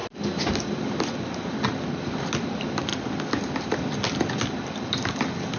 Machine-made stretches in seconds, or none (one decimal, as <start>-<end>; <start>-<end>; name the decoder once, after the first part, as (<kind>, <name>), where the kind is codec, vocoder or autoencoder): none